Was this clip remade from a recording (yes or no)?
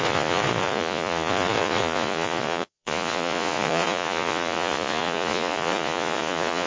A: yes